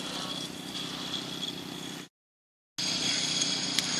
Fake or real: real